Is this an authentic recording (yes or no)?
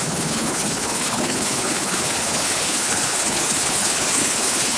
no